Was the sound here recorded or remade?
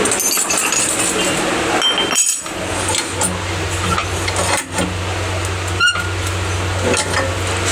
recorded